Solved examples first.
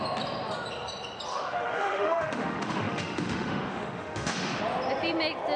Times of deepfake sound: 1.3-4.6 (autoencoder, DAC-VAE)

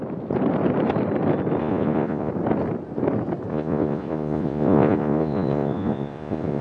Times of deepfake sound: 1.6-2.3 (vocoder, Vocos); 3.5-6.6

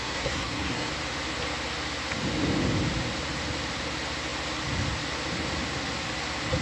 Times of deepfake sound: 0.0-0.9 (codec, SNAC)

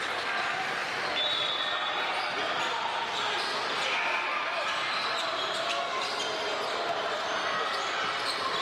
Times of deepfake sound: none

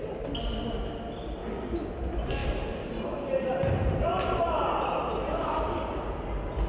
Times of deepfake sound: 1.4-1.9 (codec, DAC)